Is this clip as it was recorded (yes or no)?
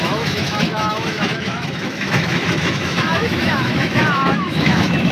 no